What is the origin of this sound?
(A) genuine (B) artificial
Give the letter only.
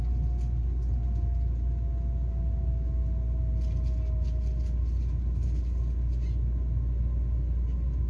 A